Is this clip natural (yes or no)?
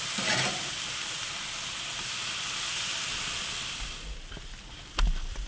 yes